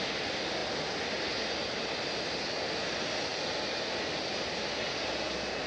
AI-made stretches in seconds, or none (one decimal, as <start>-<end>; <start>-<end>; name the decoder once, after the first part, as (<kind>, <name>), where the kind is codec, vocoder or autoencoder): none